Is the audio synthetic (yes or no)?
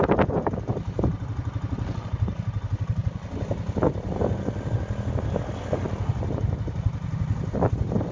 no